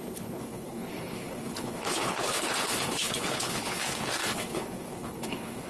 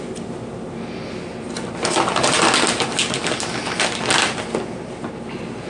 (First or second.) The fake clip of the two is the first